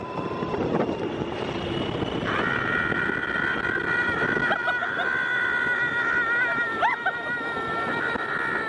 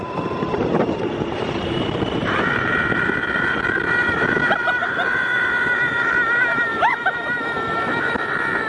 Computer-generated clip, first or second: second